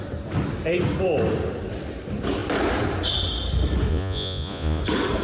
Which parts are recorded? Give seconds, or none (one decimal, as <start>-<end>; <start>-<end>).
0.0-3.9; 4.8-5.2